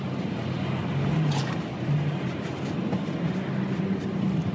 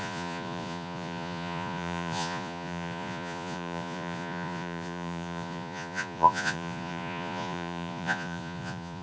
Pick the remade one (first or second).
second